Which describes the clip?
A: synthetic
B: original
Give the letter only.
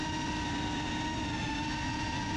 B